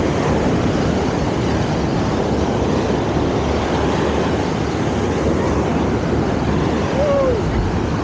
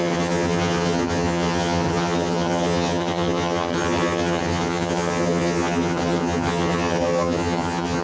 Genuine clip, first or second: first